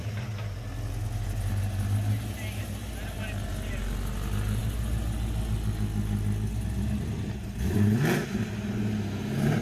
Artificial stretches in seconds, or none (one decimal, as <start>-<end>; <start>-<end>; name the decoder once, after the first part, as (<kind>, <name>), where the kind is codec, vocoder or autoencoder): none